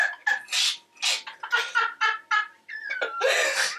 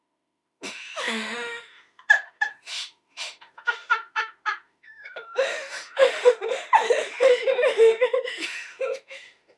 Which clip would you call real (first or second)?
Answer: first